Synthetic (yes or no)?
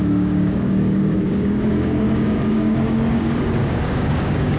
yes